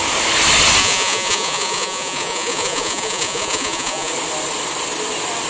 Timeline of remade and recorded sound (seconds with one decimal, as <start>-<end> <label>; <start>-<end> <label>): 0.0-0.8 recorded; 0.8-4.1 remade; 4.1-5.5 recorded